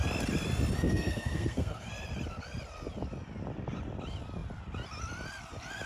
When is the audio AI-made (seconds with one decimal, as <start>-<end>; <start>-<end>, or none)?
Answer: 0.9-1.9